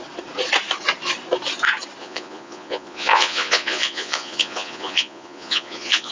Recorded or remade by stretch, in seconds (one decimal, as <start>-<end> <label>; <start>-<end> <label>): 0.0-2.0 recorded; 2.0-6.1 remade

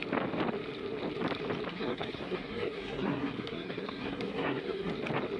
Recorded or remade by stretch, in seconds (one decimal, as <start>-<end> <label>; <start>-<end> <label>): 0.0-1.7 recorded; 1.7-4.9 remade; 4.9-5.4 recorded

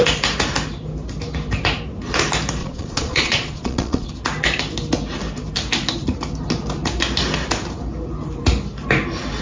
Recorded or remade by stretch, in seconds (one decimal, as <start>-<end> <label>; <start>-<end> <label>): 0.0-2.6 recorded; 2.6-4.1 remade; 4.1-9.4 recorded

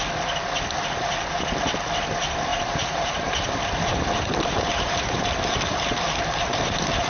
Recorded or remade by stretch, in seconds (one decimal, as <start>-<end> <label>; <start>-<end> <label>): 0.0-2.5 recorded; 2.5-7.1 remade

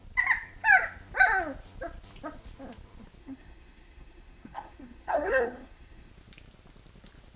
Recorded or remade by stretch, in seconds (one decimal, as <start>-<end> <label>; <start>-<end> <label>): 0.0-3.2 recorded; 3.2-6.1 remade; 6.1-7.4 recorded

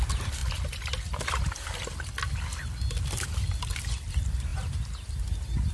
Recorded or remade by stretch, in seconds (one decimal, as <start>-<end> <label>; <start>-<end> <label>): 0.0-5.7 recorded